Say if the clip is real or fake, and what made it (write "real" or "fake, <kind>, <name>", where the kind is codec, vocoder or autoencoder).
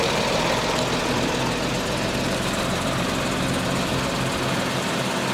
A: real